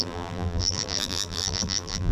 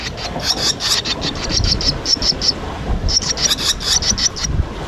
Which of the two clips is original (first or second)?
second